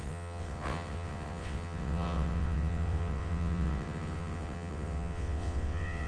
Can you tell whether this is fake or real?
fake